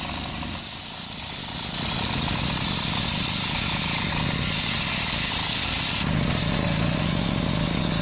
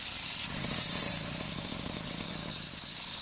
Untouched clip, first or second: first